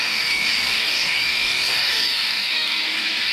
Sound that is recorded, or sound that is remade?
remade